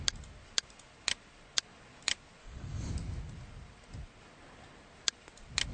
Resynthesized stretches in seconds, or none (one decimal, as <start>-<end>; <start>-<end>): 2.4-2.9